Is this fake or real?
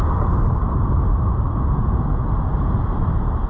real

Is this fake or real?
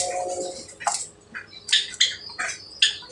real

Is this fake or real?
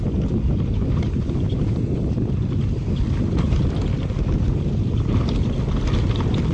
real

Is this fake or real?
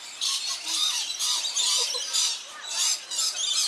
real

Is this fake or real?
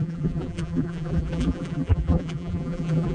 fake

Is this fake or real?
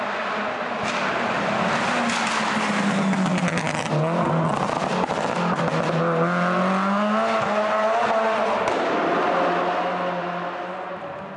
real